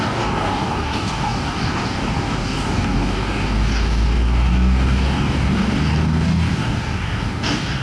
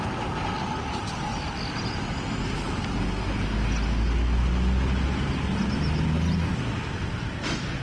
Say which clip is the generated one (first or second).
first